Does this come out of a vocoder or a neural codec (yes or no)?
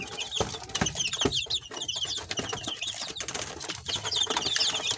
no